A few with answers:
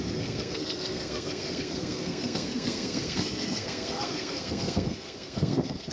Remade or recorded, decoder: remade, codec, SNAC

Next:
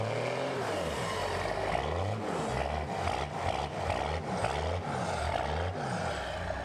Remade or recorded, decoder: recorded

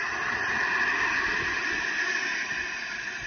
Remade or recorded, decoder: recorded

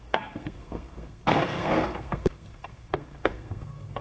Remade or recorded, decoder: remade, codec, SNAC